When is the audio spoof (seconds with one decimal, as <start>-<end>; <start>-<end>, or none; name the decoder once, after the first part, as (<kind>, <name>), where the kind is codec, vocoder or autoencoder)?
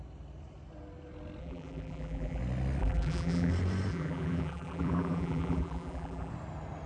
1.4-2.4 (vocoder, BigVGAN v2); 2.8-3.5; 3.9-6.3